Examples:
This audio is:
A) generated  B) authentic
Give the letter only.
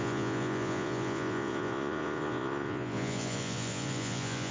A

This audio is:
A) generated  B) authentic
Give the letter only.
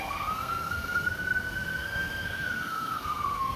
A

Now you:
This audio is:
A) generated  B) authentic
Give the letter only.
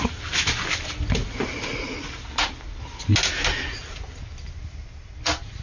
B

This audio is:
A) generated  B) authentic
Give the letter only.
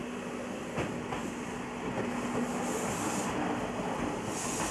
B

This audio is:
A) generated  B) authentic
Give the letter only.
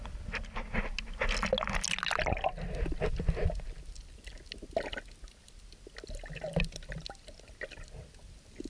B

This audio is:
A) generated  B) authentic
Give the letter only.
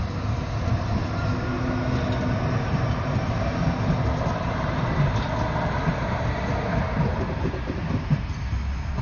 B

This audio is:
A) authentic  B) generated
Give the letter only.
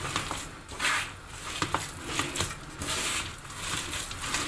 A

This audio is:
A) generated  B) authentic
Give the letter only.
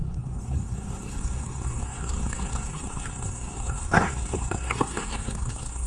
A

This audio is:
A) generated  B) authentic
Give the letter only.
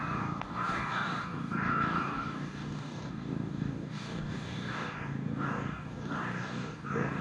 A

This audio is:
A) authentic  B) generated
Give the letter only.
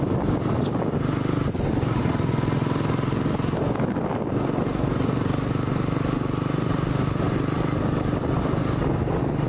A